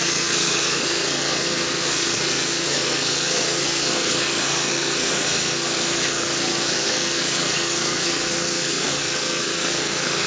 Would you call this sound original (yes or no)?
no